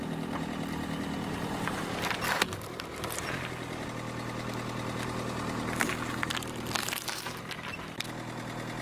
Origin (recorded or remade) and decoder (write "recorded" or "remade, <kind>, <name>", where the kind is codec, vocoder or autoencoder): recorded